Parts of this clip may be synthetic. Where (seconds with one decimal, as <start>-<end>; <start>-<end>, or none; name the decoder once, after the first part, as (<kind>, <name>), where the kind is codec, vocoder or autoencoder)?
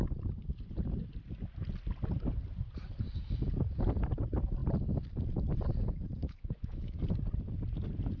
6.2-7.0 (autoencoder, DAC-VAE)